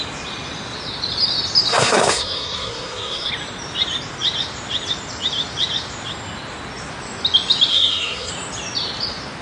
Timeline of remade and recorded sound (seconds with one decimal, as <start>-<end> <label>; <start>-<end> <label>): 0.0-1.7 recorded; 1.7-3.3 remade; 3.3-7.7 recorded; 7.7-8.3 remade; 8.3-9.4 recorded